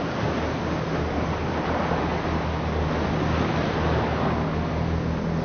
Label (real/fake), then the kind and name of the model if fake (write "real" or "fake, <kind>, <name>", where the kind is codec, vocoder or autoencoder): real